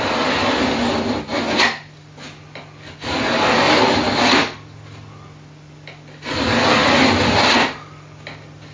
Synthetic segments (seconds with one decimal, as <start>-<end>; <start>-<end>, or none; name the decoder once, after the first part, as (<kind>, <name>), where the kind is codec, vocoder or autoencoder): none